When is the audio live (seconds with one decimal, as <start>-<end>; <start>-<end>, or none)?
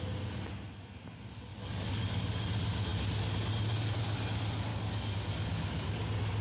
0.0-1.5; 2.4-4.7; 6.0-6.4